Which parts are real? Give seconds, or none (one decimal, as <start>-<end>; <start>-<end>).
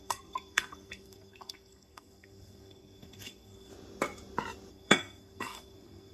3.7-4.7